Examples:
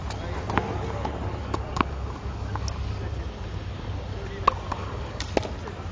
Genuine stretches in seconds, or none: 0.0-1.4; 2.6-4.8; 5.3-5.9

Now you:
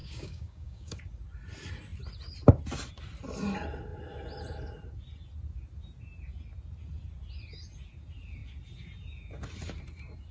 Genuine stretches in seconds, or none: 1.0-10.3

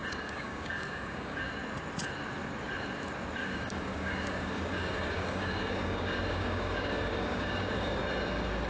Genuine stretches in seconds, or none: 1.5-3.4; 8.0-8.7

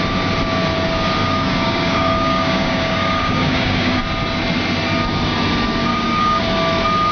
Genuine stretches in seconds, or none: 0.0-1.2; 4.0-5.9; 6.4-7.1

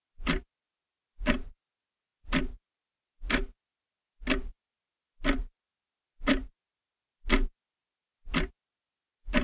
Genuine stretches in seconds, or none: 0.0-9.4

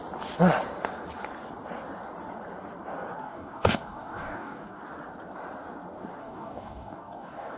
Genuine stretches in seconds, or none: 0.0-3.2; 4.8-6.2

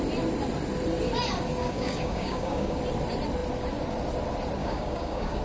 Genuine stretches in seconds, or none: 0.0-1.6; 2.8-4.6